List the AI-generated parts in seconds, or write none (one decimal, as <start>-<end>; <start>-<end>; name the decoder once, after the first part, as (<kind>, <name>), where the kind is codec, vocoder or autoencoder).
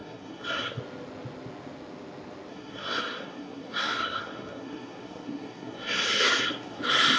0.0-0.8 (codec, SNAC); 2.5-6.8